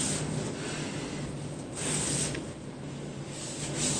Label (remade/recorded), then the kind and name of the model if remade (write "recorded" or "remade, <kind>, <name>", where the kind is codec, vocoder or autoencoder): recorded